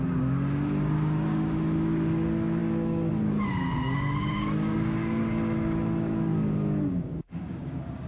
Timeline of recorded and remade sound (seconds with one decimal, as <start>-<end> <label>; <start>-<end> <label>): 0.0-8.1 remade